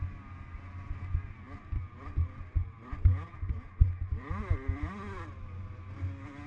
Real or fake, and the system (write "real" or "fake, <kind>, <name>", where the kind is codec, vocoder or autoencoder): real